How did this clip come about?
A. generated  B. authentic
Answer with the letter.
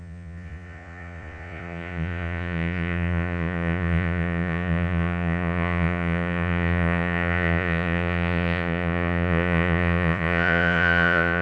A